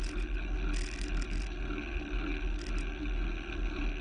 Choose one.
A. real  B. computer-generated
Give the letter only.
A